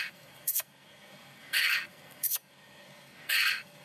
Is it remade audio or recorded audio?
remade